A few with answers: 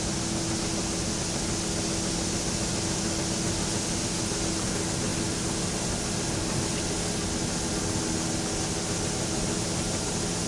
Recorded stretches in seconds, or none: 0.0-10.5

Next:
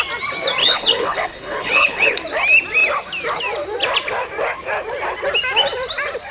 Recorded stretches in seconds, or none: 0.0-0.6; 2.2-6.3

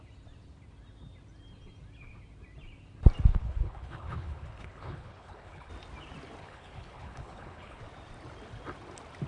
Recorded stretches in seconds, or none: 0.0-3.3; 5.7-6.4; 7.8-9.3

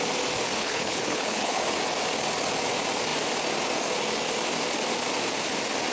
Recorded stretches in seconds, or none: 0.0-0.6; 1.6-5.9

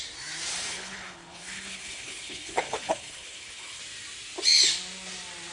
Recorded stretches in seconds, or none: 0.0-0.5; 3.8-5.5